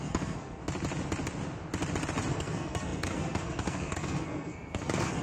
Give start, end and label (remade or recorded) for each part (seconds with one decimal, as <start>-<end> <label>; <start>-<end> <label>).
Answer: 0.0-0.6 remade; 0.6-2.3 recorded; 2.3-5.2 remade